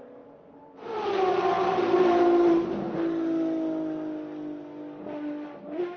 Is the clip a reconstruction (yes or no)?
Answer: no